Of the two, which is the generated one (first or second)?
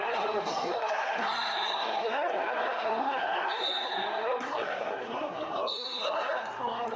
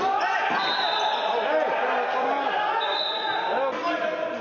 first